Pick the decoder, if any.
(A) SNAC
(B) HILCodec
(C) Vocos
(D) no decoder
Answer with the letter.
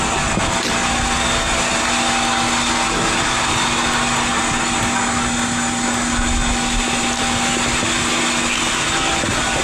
D